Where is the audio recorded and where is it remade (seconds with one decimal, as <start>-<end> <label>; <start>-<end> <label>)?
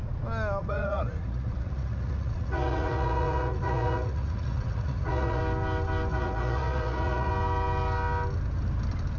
0.0-0.6 recorded; 0.6-5.4 remade; 5.4-6.1 recorded; 6.1-7.3 remade; 7.3-9.2 recorded